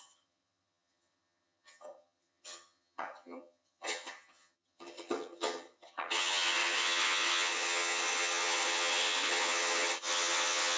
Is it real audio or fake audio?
fake